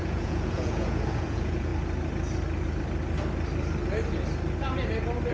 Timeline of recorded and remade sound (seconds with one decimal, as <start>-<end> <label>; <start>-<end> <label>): 0.0-1.7 remade; 1.7-5.3 recorded